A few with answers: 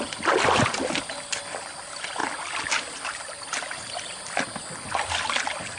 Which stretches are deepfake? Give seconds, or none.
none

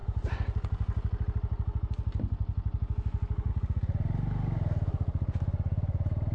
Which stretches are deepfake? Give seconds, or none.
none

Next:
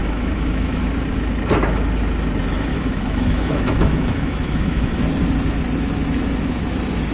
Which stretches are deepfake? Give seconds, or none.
0.0-0.8 (autoencoder, DAC-VAE); 2.7-5.0

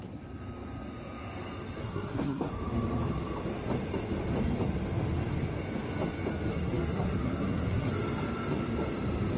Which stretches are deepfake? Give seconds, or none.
1.8-2.5 (codec, SNAC); 6.5-7.9

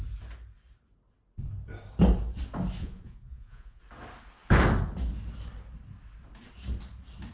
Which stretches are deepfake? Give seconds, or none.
2.8-3.8 (vocoder, Vocos)